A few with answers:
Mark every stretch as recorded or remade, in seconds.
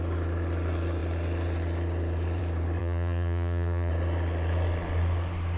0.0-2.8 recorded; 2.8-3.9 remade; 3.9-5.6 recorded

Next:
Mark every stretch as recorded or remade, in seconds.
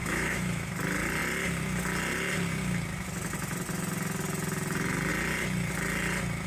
0.0-0.7 remade; 0.7-6.5 recorded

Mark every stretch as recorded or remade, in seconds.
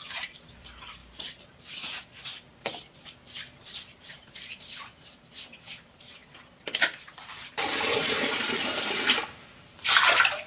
0.0-1.0 remade; 1.0-4.1 recorded; 4.1-6.2 remade; 6.2-7.0 recorded; 7.0-10.5 remade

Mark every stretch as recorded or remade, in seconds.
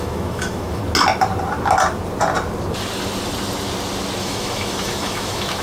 0.0-0.8 remade; 0.8-4.2 recorded; 4.2-5.6 remade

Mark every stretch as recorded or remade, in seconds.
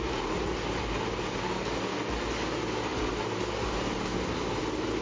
0.0-5.0 recorded